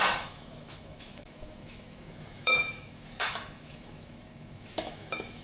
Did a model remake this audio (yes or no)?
yes